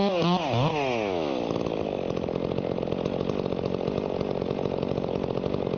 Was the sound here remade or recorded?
recorded